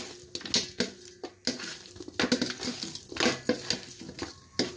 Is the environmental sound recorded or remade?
recorded